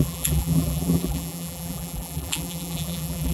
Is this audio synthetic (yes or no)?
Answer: yes